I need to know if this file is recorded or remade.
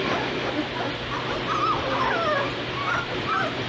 recorded